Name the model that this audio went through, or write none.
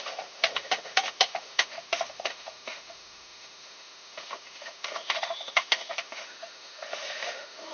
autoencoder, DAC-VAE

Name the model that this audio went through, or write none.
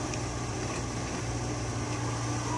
none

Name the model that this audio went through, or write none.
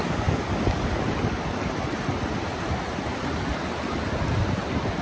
none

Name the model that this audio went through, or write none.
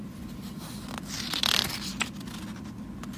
none